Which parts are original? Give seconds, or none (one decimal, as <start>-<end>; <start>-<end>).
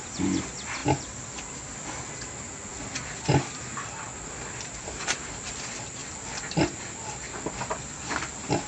0.0-8.7